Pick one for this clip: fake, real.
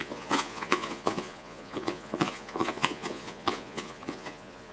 fake